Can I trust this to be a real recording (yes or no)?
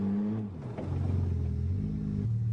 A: yes